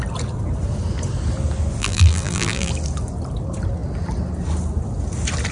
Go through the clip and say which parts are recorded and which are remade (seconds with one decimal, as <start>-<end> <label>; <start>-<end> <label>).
0.0-1.8 recorded; 1.8-2.7 remade; 2.7-5.5 recorded